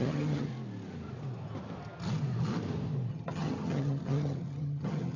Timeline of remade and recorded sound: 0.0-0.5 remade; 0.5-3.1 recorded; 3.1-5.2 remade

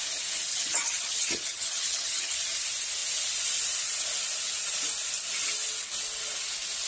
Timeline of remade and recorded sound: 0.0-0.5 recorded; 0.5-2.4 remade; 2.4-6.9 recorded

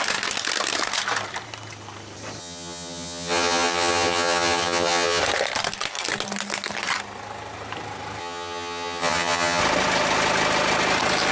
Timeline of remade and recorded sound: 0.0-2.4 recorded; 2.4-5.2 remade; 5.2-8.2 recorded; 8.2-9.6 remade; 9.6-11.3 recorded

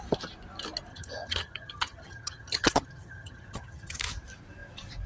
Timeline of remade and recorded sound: 0.0-0.9 recorded; 0.9-4.0 remade; 4.0-5.1 recorded

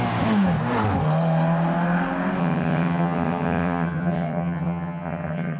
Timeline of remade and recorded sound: 0.0-2.4 recorded; 2.4-5.6 remade